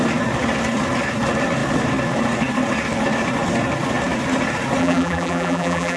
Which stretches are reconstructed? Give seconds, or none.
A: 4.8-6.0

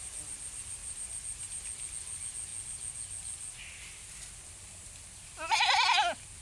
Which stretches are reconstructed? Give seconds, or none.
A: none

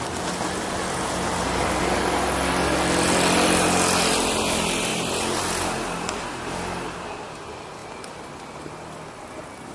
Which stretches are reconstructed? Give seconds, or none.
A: none

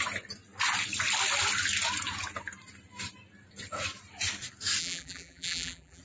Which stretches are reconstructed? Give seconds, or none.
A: 4.8-6.0

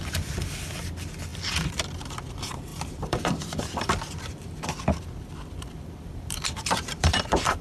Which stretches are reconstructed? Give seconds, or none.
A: 1.3-1.8; 2.7-7.6

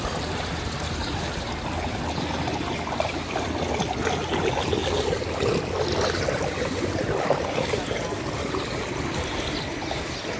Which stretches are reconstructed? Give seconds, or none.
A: none

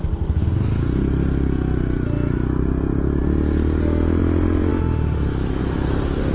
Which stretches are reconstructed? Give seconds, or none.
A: none

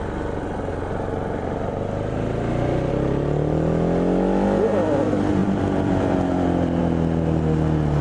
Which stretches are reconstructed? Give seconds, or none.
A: 0.7-2.9; 5.4-6.8